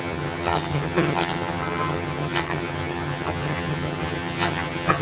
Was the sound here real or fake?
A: fake